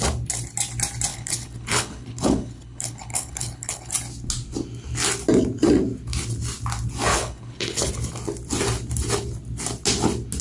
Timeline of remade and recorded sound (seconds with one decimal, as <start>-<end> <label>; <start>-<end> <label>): 0.0-1.1 recorded; 1.1-3.9 remade; 3.9-7.1 recorded; 7.1-7.9 remade; 7.9-10.4 recorded